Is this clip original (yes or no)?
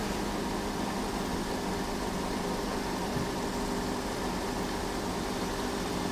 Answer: yes